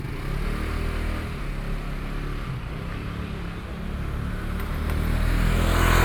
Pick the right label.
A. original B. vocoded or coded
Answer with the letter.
A